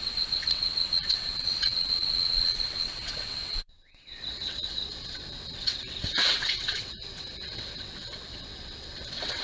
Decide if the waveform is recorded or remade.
remade